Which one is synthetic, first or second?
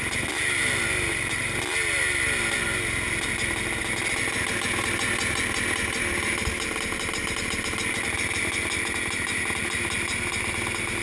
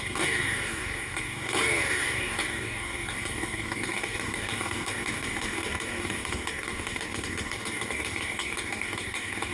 second